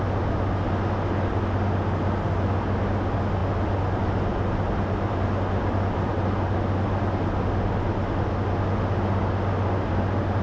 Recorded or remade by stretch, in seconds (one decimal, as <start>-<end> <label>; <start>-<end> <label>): 0.0-10.4 recorded